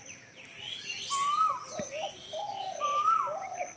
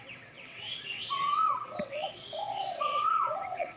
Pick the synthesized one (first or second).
second